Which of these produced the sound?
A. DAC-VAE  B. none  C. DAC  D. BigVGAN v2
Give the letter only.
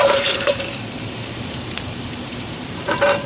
D